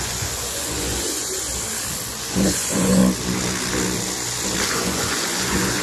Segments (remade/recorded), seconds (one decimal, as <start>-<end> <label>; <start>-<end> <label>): 0.0-1.5 remade; 1.5-2.1 recorded; 2.1-3.0 remade; 3.0-4.7 recorded; 4.7-5.8 remade